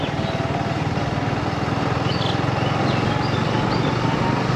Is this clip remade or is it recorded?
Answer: recorded